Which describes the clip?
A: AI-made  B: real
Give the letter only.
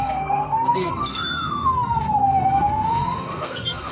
A